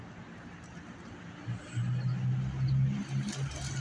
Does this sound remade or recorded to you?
recorded